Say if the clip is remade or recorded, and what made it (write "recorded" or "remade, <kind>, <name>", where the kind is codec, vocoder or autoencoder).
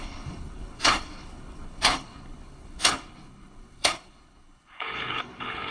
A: remade, codec, HILCodec